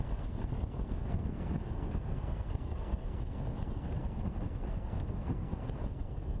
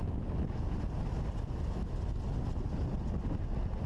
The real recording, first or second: second